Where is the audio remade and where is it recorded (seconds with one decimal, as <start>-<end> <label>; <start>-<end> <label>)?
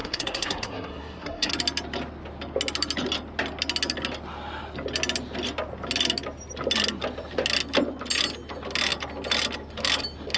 0.0-1.5 remade; 1.5-10.4 recorded